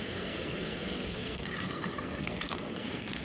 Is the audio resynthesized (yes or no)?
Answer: yes